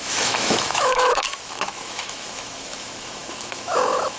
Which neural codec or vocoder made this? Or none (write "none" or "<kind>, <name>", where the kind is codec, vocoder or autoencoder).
autoencoder, DAC-VAE